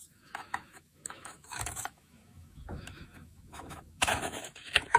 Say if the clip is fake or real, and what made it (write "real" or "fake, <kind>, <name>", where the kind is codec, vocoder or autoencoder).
fake, autoencoder, DAC-VAE